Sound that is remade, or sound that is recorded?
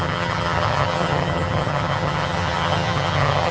remade